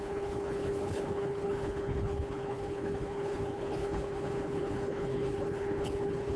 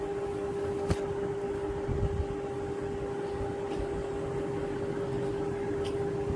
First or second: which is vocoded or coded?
first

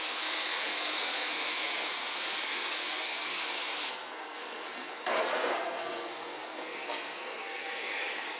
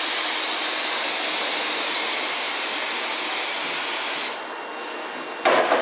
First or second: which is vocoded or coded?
first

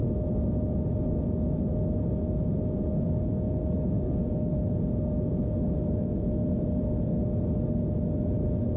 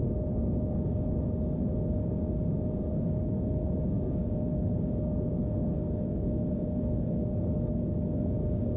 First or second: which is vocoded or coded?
second